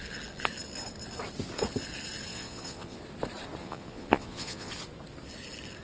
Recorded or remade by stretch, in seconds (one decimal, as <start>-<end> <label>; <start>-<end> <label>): 0.0-2.3 recorded; 2.3-3.0 remade; 3.0-3.6 recorded; 3.6-4.7 remade; 4.7-5.8 recorded